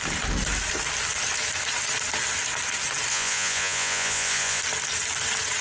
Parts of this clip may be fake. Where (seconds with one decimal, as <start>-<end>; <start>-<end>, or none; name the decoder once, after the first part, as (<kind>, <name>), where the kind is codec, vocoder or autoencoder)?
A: 3.1-4.6 (vocoder, Vocos)